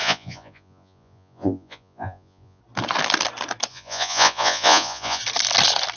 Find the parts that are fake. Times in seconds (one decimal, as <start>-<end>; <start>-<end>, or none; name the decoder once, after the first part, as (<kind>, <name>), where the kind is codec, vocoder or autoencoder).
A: 0.0-2.6 (vocoder, Vocos); 3.7-5.2